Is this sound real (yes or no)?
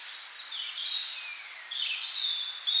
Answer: yes